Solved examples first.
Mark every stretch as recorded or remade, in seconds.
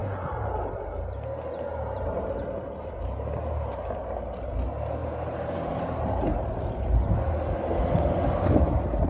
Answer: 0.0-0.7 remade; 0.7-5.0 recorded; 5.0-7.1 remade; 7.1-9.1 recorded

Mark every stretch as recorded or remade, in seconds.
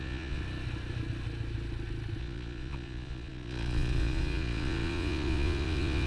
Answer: 0.0-0.4 remade; 0.4-2.2 recorded; 2.2-6.1 remade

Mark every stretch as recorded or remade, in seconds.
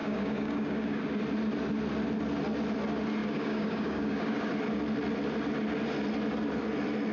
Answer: 0.0-1.0 remade; 1.0-3.2 recorded; 3.2-4.5 remade; 4.5-7.1 recorded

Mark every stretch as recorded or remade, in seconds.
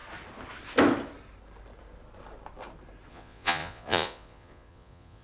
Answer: 0.0-3.1 recorded; 3.1-5.2 remade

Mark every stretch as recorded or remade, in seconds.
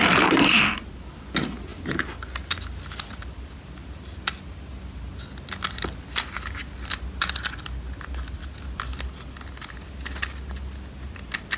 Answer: 0.0-11.6 recorded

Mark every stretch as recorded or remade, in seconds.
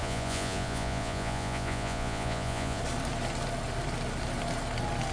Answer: 0.0-2.8 remade; 2.8-5.1 recorded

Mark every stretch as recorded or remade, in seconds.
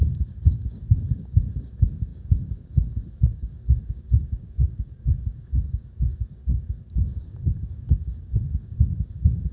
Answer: 0.0-9.5 remade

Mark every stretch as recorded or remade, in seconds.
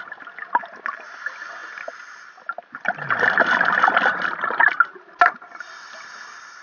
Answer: 0.0-6.6 recorded